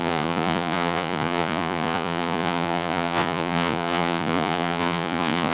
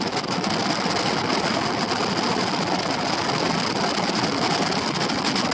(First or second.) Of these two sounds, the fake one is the first